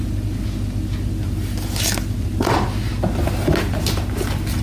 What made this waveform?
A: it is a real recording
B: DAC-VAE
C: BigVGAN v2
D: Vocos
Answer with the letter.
A